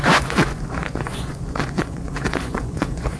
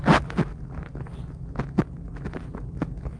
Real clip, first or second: second